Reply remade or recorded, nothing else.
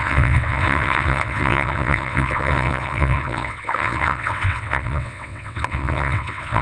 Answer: remade